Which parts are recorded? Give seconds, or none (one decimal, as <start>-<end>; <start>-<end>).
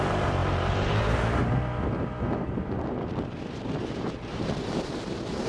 none